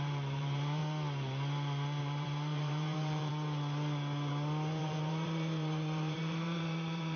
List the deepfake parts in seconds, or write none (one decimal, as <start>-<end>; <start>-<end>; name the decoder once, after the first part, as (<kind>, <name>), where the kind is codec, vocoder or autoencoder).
0.0-0.8 (vocoder, BigVGAN v2); 2.0-3.3; 4.8-7.2